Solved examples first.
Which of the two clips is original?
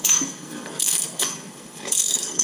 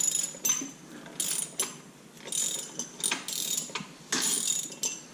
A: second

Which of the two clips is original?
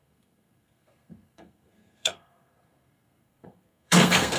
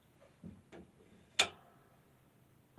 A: second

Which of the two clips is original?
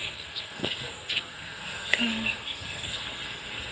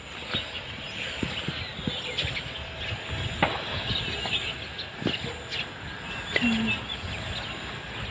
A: second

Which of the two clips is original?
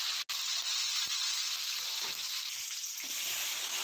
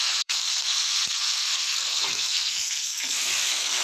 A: first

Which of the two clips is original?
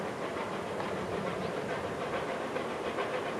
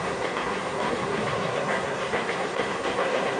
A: first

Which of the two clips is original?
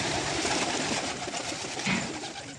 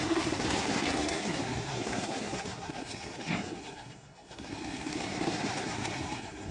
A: first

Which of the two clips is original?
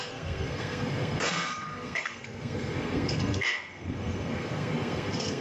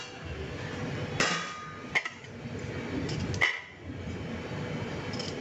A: second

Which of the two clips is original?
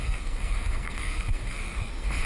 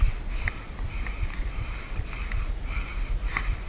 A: second